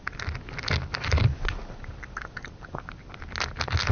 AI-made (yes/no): no